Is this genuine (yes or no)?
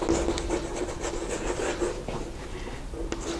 yes